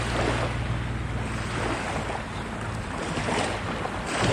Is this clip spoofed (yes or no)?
no